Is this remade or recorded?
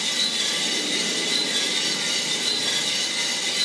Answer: recorded